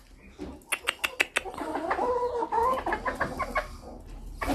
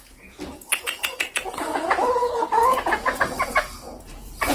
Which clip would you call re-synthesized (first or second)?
second